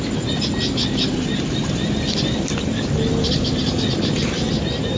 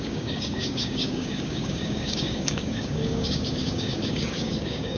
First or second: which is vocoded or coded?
second